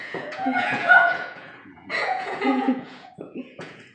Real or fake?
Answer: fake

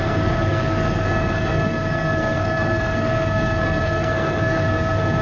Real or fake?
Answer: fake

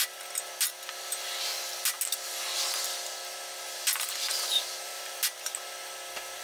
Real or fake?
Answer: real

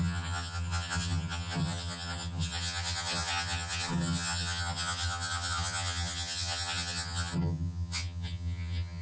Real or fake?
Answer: fake